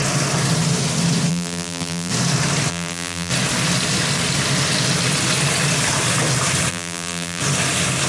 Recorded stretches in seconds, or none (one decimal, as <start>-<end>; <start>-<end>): 0.0-1.3; 2.1-2.7; 3.3-6.7; 7.4-8.1